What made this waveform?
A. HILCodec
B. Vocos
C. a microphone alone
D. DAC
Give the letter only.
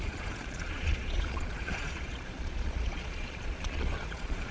B